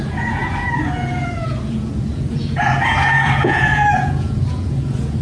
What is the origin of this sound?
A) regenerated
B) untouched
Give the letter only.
A